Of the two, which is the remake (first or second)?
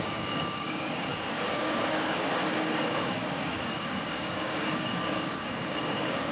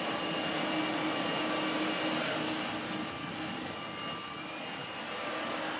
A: first